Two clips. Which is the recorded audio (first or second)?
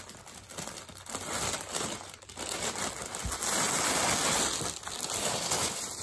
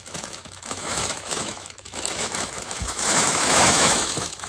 first